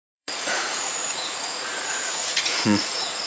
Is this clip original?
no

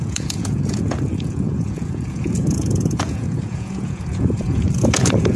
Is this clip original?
no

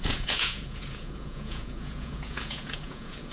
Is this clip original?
no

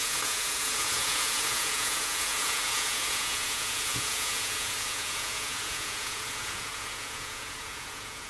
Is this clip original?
no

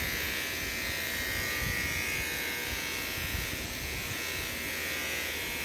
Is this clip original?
no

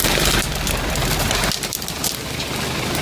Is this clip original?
yes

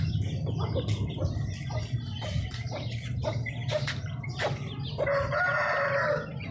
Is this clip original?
yes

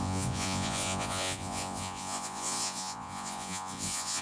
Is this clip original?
no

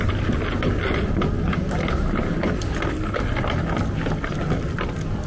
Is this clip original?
yes